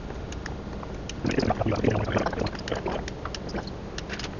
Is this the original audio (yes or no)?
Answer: yes